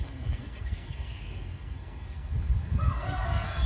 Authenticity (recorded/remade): remade